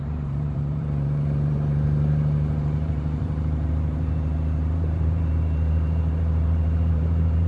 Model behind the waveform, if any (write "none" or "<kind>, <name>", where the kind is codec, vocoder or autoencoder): vocoder, BigVGAN v2